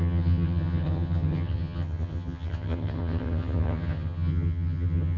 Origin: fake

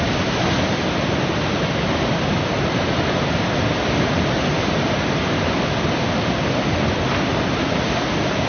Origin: real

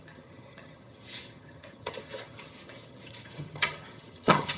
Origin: fake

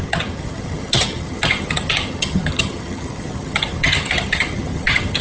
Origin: fake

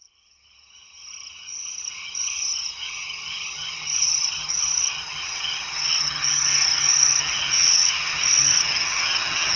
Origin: fake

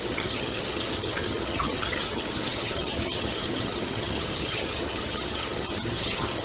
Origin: fake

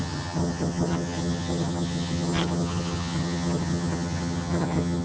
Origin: fake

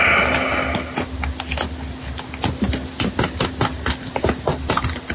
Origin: real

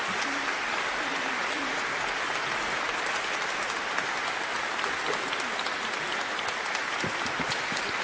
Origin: real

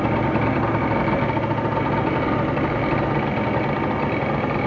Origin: real